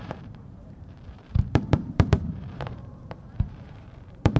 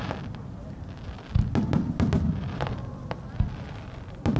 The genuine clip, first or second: second